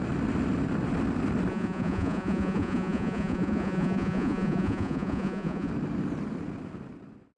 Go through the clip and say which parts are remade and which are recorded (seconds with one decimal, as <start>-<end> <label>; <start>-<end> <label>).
0.0-1.5 recorded; 1.5-5.7 remade; 5.7-7.4 recorded